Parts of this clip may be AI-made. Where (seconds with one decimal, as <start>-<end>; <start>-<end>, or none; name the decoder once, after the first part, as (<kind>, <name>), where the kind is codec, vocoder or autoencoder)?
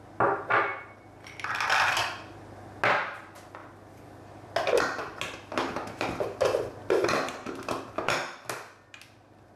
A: none